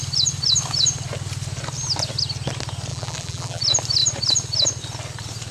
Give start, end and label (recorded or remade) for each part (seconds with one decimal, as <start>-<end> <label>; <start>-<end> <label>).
0.0-2.9 recorded; 2.9-3.6 remade; 3.6-5.5 recorded